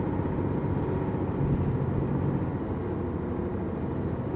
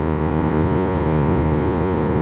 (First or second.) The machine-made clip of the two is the second